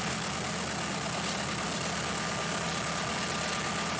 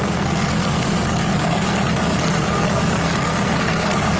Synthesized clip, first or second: second